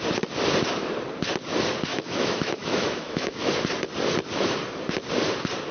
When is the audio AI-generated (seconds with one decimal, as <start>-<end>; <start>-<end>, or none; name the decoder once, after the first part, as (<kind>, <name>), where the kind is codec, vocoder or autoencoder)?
1.9-3.5 (autoencoder, DAC-VAE)